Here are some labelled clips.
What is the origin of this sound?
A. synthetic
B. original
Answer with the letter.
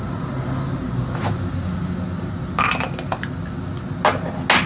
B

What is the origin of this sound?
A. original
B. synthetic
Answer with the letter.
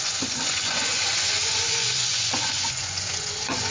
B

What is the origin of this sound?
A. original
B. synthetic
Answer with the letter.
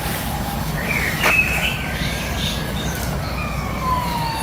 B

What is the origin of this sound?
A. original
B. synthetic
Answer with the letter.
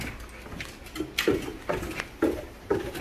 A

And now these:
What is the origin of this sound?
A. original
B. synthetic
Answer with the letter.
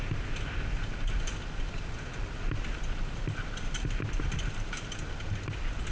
A